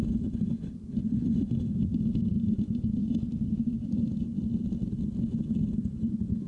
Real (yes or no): yes